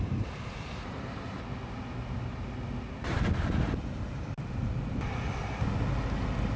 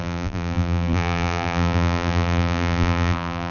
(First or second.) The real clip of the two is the first